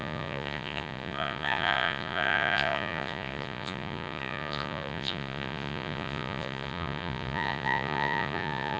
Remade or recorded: remade